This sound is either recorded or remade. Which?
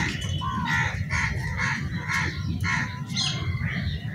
recorded